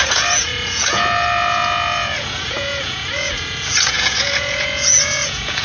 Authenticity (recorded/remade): remade